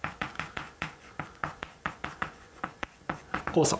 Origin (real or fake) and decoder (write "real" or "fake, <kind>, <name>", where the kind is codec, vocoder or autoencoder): fake, vocoder, Vocos